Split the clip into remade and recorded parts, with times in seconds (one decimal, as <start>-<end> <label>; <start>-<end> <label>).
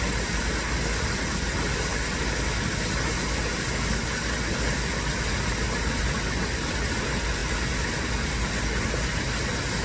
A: 0.0-9.8 recorded